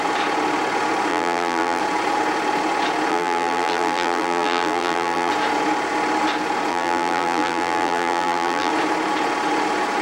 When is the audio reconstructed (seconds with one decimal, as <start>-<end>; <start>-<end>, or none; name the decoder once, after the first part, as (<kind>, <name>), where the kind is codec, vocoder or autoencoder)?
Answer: 1.1-1.8 (vocoder, BigVGAN v2); 3.1-5.3; 6.7-8.7